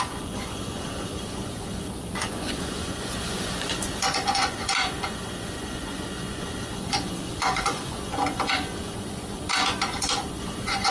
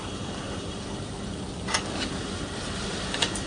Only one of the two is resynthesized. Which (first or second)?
first